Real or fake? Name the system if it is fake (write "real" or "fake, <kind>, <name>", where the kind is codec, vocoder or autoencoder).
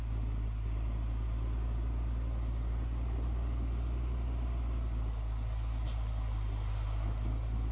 real